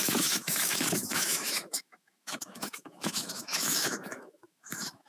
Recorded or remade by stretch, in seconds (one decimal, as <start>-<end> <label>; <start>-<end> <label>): 0.0-5.1 remade